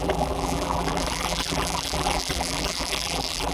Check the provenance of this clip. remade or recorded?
remade